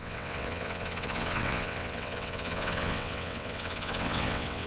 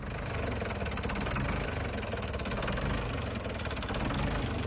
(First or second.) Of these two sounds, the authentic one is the second